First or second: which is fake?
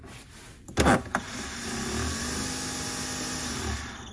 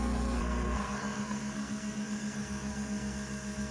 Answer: second